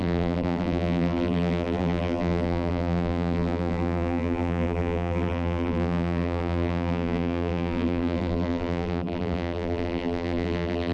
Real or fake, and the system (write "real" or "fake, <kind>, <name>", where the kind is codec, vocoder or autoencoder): fake, vocoder, BigVGAN v2